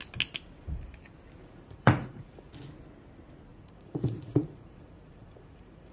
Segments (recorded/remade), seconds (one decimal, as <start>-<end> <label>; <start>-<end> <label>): 0.0-1.4 recorded; 1.4-2.5 remade; 2.5-3.5 recorded; 3.5-5.9 remade